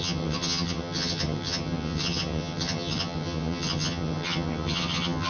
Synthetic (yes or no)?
yes